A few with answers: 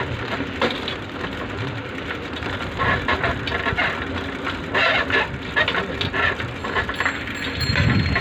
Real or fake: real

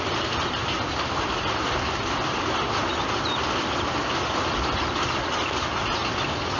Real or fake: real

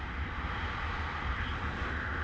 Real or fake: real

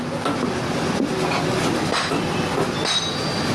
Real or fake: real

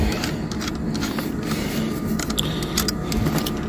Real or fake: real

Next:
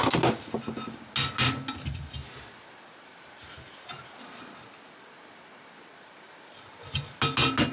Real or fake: real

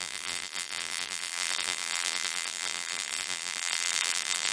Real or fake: fake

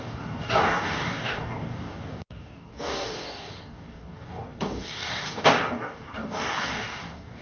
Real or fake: fake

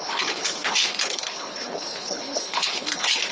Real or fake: fake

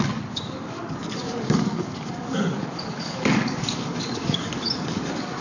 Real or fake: fake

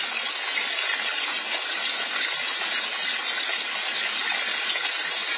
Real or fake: real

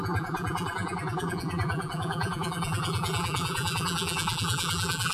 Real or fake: fake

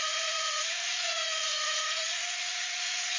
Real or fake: fake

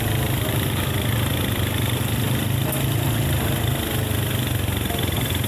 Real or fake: real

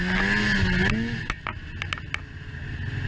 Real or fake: real